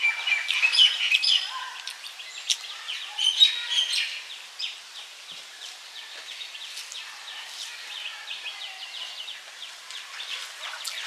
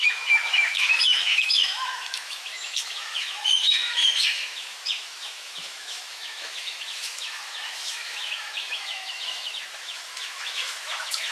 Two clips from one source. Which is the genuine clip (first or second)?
first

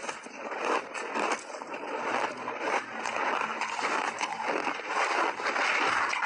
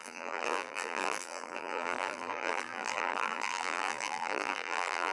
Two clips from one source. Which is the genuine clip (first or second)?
first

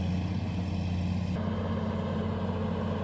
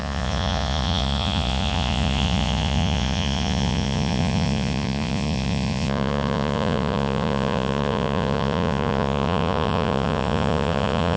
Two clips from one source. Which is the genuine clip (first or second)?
first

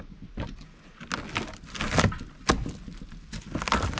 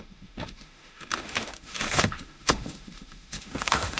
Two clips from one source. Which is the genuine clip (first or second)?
first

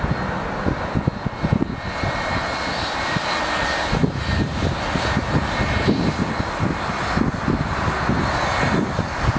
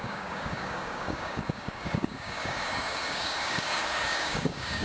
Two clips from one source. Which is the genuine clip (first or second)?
first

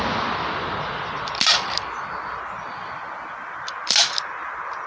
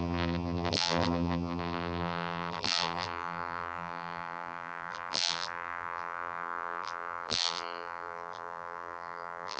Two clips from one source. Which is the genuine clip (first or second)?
first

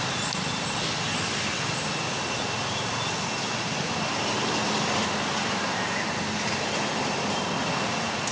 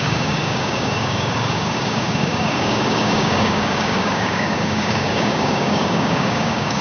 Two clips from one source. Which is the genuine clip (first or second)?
first